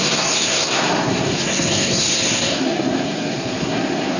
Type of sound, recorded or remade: remade